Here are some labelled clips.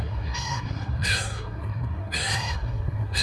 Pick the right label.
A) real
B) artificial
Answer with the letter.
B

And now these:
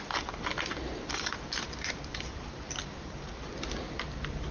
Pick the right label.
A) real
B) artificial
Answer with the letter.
B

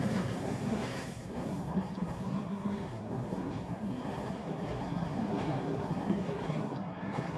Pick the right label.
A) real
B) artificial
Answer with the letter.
B